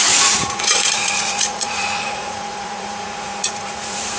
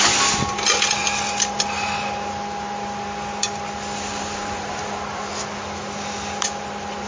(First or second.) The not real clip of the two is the first